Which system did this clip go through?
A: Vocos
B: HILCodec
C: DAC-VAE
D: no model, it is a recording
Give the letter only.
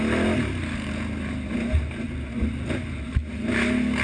D